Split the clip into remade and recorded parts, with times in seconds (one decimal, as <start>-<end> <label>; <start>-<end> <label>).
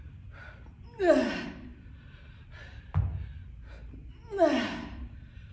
0.0-5.5 recorded